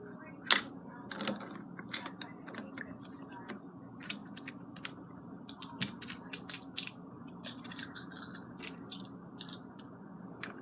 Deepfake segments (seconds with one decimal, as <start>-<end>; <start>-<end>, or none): 9.6-10.2